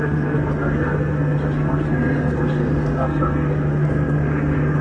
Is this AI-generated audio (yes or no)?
yes